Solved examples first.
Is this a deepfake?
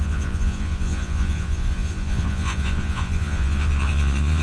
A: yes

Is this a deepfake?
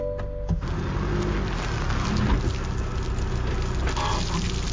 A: no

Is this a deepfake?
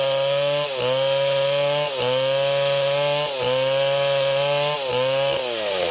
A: no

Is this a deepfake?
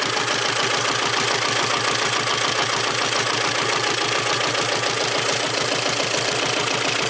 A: no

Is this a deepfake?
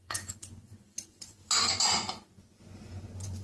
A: yes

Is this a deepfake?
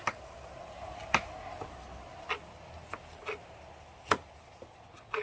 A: no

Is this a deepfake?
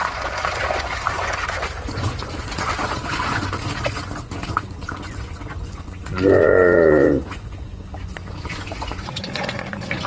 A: yes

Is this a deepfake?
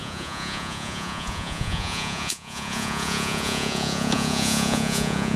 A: yes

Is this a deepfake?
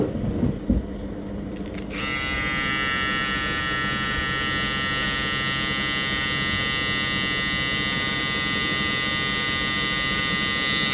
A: no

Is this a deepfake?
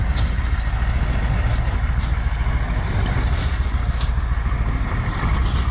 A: no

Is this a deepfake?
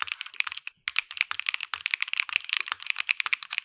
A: no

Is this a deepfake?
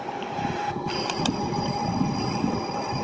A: no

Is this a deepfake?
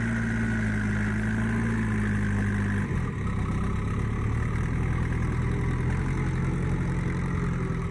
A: no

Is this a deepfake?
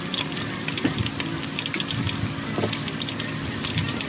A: no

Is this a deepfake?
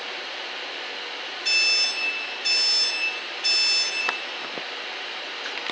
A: no